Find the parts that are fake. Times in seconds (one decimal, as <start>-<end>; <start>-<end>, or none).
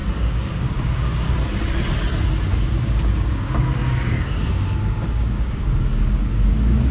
0.0-1.3; 2.5-6.9